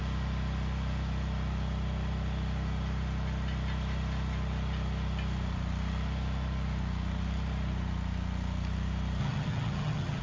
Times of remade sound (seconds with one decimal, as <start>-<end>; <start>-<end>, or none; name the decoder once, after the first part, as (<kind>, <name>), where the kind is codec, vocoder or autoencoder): 9.2-10.2 (vocoder, HiFi-GAN)